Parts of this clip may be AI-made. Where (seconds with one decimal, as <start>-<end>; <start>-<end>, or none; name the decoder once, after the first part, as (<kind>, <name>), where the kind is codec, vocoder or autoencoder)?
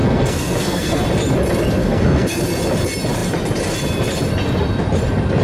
0.0-1.0 (codec, SNAC); 1.8-2.4